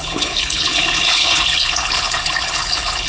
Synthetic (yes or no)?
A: yes